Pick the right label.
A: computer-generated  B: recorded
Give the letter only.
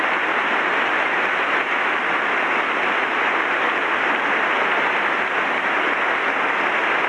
B